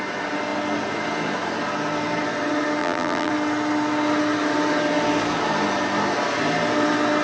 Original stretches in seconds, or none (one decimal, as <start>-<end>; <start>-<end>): 0.0-2.8; 3.3-7.2